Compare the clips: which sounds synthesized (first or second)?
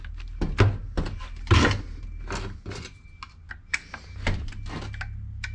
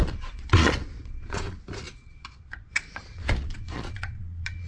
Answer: second